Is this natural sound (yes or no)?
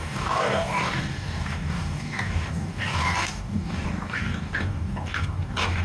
no